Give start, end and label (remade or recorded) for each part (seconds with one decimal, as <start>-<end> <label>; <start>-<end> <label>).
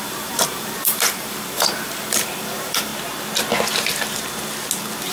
0.0-2.9 remade; 2.9-5.1 recorded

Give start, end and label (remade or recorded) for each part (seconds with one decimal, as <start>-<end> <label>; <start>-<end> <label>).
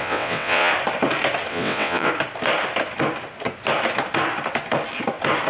0.0-0.7 remade; 0.7-1.5 recorded; 1.5-2.1 remade; 2.1-5.5 recorded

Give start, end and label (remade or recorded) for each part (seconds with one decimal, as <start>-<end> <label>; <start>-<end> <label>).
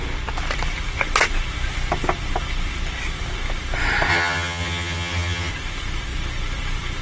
0.0-4.1 recorded; 4.1-5.5 remade; 5.5-7.0 recorded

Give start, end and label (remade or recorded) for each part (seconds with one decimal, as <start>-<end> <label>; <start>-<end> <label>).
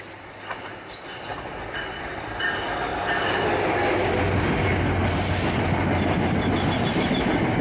0.0-7.6 recorded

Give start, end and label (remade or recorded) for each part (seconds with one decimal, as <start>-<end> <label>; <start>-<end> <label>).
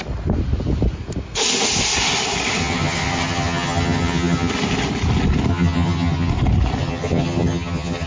0.0-2.6 recorded; 2.6-4.5 remade; 4.5-5.5 recorded; 5.5-6.3 remade; 6.3-6.8 recorded; 6.8-8.1 remade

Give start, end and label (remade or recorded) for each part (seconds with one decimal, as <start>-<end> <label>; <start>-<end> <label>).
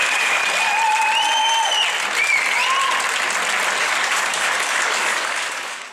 0.0-0.4 remade; 0.4-3.8 recorded; 3.8-5.9 remade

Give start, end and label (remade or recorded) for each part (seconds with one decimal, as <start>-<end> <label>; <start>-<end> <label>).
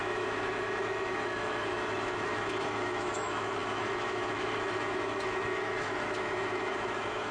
0.0-7.3 remade